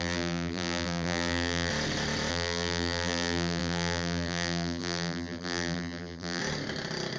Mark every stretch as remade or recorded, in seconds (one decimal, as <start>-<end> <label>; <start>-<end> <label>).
0.0-1.7 remade; 1.7-2.3 recorded; 2.3-6.4 remade; 6.4-7.2 recorded